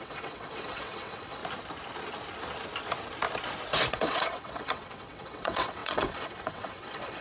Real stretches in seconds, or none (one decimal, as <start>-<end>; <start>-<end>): 1.4-3.9